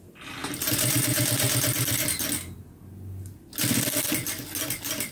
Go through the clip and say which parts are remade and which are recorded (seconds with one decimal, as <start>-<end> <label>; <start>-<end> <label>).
0.0-5.1 recorded

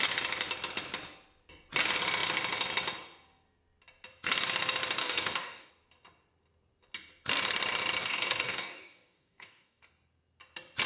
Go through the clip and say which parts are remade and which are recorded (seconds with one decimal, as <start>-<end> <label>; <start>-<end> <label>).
0.0-5.0 recorded; 5.0-5.7 remade; 5.7-8.0 recorded; 8.0-9.8 remade; 9.8-10.9 recorded

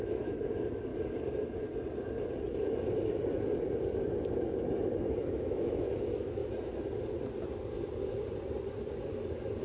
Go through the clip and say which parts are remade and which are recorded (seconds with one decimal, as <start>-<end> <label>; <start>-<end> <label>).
0.0-0.9 remade; 0.9-5.1 recorded; 5.1-6.4 remade; 6.4-9.6 recorded

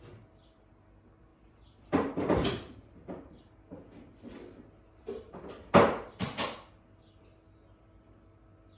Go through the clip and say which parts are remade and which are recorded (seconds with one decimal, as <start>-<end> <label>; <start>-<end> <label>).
0.0-1.3 recorded; 1.3-3.3 remade; 3.3-8.8 recorded

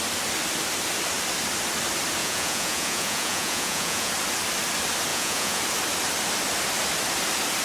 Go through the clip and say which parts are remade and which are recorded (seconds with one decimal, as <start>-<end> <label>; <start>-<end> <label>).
0.0-2.2 recorded; 2.2-4.1 remade; 4.1-5.1 recorded; 5.1-5.6 remade; 5.6-7.6 recorded

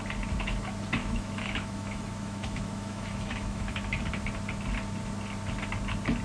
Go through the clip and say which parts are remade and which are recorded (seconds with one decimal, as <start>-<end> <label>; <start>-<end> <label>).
0.0-1.0 recorded; 1.0-4.0 remade; 4.0-6.2 recorded

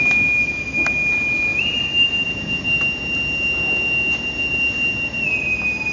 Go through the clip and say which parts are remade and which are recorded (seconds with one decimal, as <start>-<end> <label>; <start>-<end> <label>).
0.0-1.5 recorded; 1.5-2.1 remade; 2.1-5.9 recorded